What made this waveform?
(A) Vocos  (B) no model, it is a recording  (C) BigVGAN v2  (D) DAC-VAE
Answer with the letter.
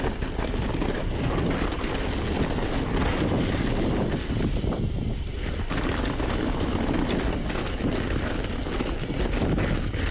B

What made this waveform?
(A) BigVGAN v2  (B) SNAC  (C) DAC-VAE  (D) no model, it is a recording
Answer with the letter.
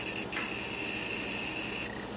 D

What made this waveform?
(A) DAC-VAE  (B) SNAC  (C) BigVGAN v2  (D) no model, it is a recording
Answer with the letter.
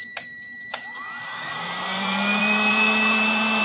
C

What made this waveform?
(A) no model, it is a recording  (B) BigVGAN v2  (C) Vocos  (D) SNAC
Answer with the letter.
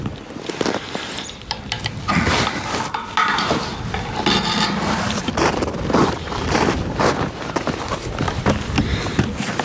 B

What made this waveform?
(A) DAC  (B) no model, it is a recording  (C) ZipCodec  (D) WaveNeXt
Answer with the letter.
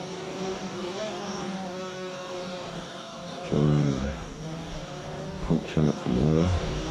A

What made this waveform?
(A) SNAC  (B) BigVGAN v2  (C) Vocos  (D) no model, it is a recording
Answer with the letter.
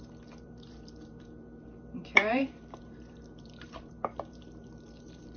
B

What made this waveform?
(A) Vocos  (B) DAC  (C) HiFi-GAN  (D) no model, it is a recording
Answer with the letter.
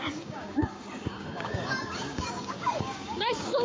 B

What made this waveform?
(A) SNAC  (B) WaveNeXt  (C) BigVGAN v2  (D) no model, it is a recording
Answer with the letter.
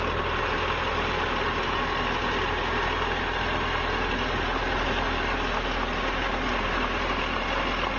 D